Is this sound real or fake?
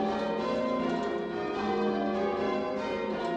real